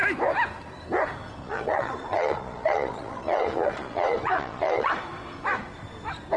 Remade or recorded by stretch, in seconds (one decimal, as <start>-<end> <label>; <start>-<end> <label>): 0.0-1.4 recorded; 1.4-4.9 remade; 4.9-6.4 recorded